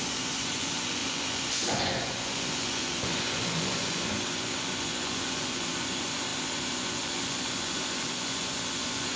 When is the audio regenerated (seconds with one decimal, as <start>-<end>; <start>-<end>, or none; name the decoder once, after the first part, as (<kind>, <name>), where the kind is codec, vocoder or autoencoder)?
0.0-9.2 (vocoder, Vocos)